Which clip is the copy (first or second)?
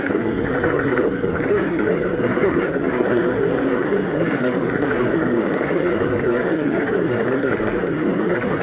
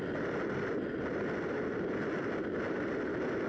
first